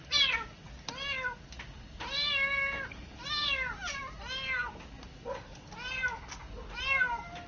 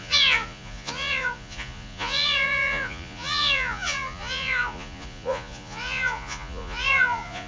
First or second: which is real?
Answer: first